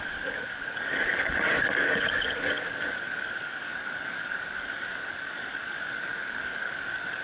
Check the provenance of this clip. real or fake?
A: fake